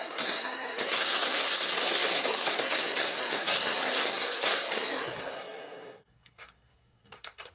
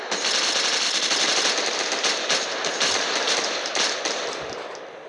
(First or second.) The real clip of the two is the second